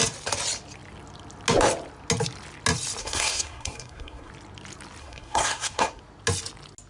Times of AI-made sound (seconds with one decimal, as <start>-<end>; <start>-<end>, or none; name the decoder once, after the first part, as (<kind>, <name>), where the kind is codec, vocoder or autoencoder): 3.0-4.3 (codec, SNAC); 5.0-6.0